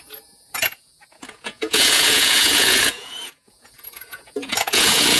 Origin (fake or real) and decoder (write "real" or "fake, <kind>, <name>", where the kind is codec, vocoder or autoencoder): fake, vocoder, Vocos